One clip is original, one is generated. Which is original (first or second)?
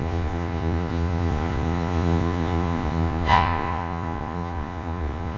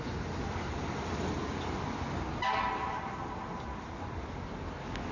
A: second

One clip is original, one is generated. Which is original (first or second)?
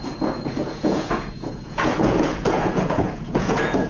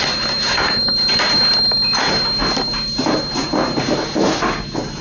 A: second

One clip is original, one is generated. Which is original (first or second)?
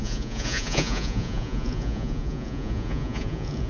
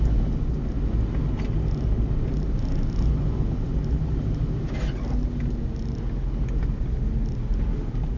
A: second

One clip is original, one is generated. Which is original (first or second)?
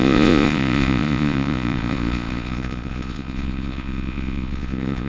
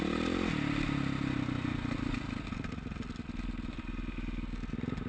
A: second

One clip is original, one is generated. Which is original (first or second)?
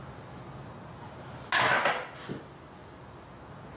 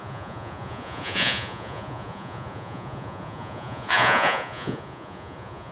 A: first